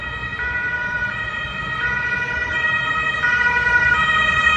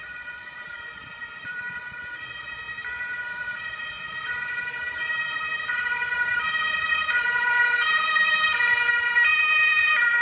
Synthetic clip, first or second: second